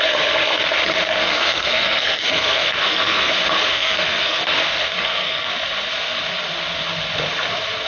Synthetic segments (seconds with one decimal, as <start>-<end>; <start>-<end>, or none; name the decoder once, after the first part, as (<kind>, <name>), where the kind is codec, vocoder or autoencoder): 1.2-3.3 (codec, SNAC); 3.7-4.4; 5.0-5.5